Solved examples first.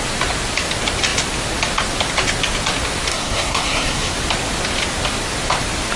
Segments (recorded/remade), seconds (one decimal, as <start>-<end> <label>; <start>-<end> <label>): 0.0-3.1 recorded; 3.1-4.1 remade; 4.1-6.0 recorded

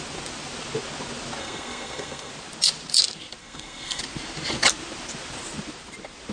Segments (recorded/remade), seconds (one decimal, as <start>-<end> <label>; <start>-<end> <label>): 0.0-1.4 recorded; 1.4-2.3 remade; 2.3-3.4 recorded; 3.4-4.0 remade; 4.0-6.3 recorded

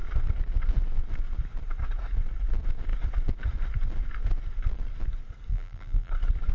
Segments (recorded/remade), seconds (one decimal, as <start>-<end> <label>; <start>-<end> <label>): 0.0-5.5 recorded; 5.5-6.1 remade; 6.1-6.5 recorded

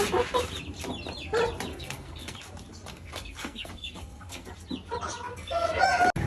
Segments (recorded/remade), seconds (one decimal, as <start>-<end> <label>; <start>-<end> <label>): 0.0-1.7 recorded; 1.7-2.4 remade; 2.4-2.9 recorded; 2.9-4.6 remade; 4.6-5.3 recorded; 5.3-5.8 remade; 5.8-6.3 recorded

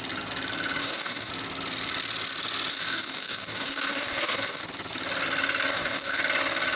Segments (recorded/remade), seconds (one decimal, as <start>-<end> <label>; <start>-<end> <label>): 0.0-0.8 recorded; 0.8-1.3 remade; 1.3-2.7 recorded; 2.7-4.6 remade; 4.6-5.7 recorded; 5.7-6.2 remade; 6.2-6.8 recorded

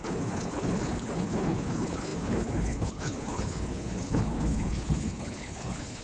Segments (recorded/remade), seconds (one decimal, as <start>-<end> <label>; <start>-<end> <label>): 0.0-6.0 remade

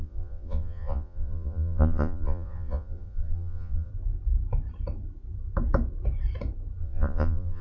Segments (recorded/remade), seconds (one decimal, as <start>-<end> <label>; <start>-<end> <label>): 0.0-3.9 remade; 3.9-6.8 recorded; 6.8-7.6 remade

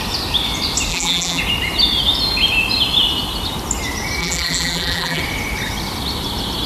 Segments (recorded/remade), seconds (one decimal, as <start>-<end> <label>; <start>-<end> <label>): 0.0-0.9 recorded; 0.9-1.4 remade; 1.4-4.2 recorded; 4.2-5.2 remade; 5.2-6.7 recorded